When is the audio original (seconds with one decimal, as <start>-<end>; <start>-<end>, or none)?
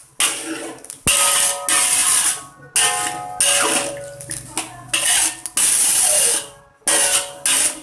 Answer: 0.0-7.8